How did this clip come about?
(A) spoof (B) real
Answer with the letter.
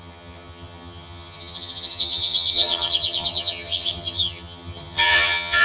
A